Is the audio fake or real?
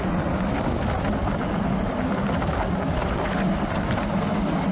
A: real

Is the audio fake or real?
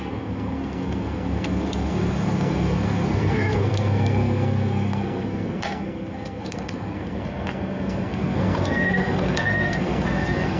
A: fake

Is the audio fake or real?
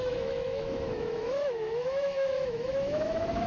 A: fake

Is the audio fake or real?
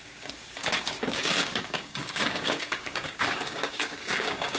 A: fake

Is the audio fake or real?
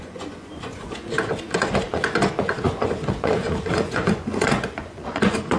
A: fake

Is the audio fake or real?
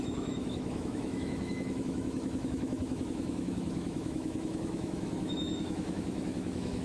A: fake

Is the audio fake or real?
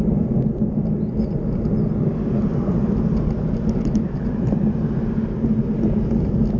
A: real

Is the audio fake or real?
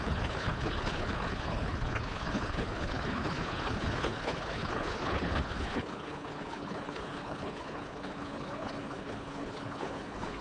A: fake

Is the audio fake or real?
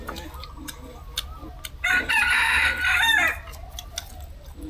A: real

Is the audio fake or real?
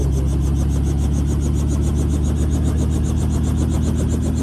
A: real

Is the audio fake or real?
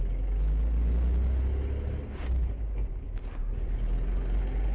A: real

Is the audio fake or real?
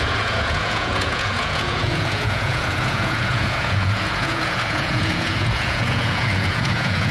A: fake